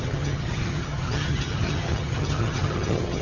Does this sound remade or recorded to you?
remade